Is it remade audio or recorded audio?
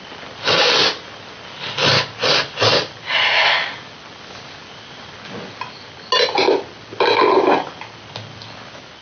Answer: recorded